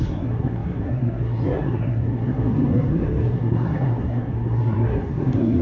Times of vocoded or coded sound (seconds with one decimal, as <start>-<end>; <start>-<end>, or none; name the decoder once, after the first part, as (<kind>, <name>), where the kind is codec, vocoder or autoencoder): 0.0-5.6 (codec, SNAC)